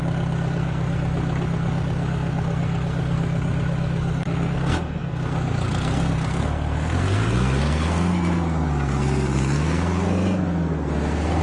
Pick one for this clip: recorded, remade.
remade